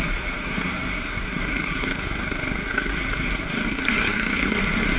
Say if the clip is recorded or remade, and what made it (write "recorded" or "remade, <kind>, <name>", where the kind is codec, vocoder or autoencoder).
remade, codec, SNAC